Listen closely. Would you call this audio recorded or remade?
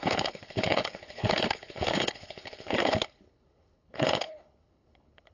remade